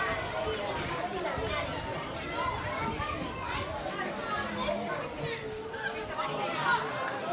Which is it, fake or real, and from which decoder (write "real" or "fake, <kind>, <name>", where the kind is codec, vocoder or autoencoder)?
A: real